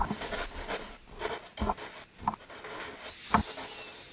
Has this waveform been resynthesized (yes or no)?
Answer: no